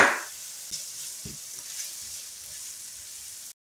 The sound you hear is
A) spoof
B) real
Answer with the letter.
B